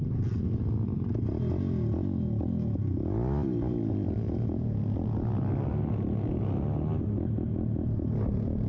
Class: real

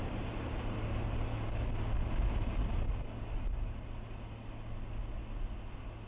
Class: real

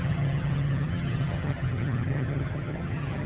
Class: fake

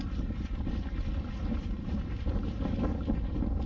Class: real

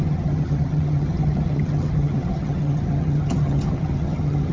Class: fake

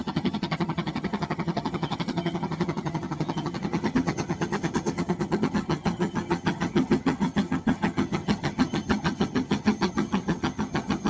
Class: fake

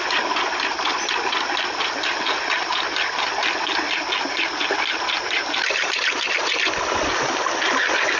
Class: real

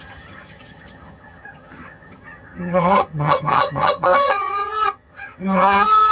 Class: fake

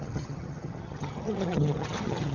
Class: fake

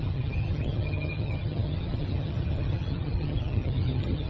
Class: fake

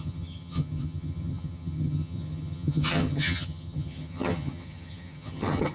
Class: fake